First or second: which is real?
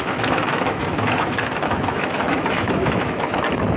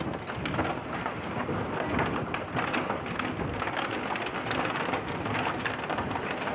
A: second